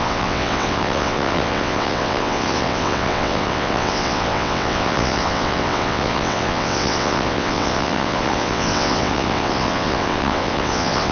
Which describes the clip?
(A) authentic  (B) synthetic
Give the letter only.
B